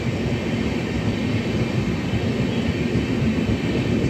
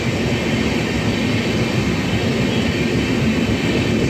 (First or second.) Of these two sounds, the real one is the second